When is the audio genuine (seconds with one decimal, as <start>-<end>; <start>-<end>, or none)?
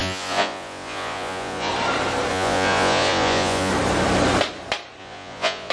1.7-2.3; 3.7-5.0